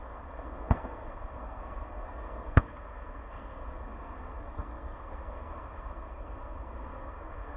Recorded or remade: remade